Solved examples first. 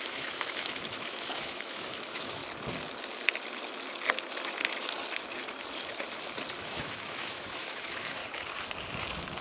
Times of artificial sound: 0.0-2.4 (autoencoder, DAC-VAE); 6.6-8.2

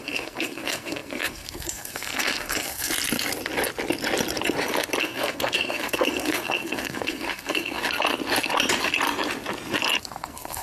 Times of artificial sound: 0.0-2.9 (codec, SNAC); 5.0-7.8; 10.0-10.6

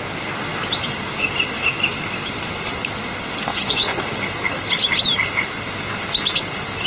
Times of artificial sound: 3.5-4.0 (vocoder, Vocos)